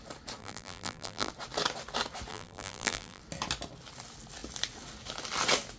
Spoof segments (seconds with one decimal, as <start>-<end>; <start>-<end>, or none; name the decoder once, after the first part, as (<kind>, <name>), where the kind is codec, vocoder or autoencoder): 0.4-1.3 (vocoder, BigVGAN v2); 2.3-3.2